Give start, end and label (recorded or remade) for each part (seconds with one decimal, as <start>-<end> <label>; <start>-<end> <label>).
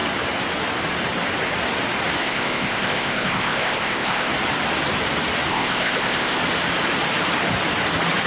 0.0-2.2 recorded; 2.2-4.3 remade; 4.3-5.5 recorded; 5.5-6.4 remade; 6.4-8.3 recorded